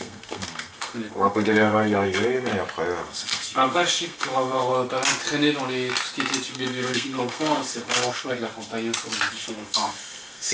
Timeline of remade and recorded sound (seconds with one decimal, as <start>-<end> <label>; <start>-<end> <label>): 0.0-2.5 remade; 2.5-3.0 recorded; 3.0-4.7 remade; 4.7-6.5 recorded; 6.5-8.7 remade; 8.7-9.3 recorded; 9.3-10.5 remade